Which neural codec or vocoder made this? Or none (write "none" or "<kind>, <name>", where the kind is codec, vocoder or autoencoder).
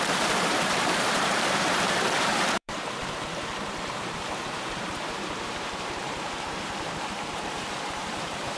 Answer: vocoder, BigVGAN v2